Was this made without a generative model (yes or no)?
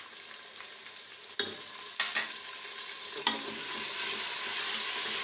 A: yes